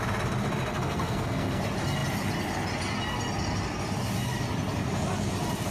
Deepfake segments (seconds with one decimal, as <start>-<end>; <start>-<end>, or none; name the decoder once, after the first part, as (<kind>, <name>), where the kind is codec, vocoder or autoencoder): 0.7-1.6 (codec, SNAC)